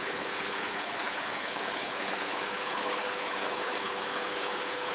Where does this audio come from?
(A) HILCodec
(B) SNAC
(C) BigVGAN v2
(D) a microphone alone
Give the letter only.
A